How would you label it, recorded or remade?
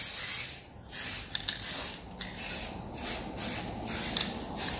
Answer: recorded